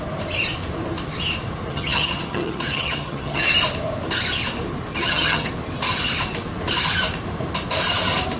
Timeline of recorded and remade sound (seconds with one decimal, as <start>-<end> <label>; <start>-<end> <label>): 0.0-1.7 recorded; 1.7-3.5 remade; 3.5-4.9 recorded; 4.9-5.5 remade; 5.5-8.4 recorded